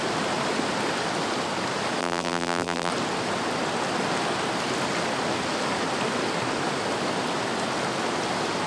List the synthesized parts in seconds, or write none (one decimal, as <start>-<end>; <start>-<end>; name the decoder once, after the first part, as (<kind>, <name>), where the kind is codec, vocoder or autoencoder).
2.0-2.9 (vocoder, BigVGAN v2)